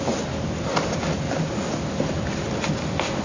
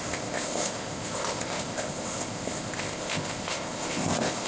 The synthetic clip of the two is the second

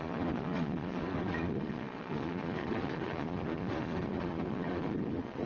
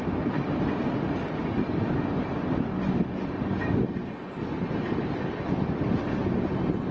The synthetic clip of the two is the first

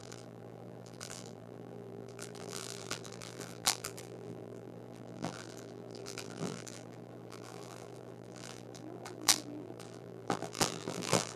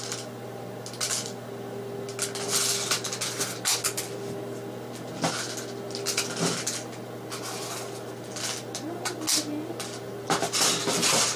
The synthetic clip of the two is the first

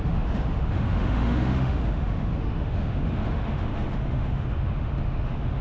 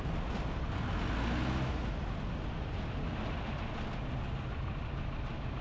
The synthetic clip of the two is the first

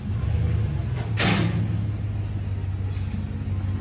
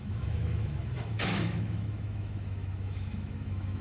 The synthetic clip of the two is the second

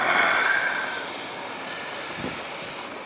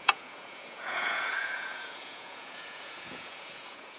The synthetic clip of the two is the second